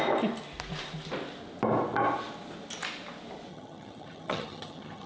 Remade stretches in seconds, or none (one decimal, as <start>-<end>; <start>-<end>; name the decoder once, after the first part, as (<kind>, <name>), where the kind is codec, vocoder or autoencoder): 3.5-5.1 (vocoder, HiFi-GAN)